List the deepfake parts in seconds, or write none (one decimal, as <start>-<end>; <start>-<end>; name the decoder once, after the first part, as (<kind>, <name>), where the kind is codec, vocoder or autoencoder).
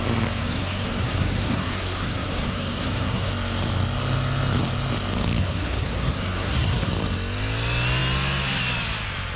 0.4-3.3 (codec, SNAC); 5.4-6.9